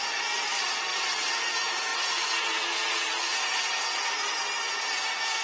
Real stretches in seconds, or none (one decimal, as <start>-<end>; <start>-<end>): 0.0-0.9; 1.5-5.4